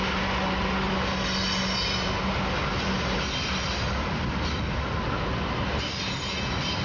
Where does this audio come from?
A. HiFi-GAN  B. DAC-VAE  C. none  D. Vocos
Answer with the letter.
C